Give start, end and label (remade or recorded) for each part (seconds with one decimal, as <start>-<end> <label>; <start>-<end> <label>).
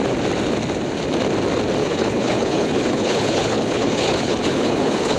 0.0-1.8 recorded; 1.8-5.2 remade